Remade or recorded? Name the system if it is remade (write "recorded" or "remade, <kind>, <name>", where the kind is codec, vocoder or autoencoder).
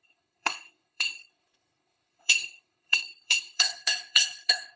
remade, codec, HILCodec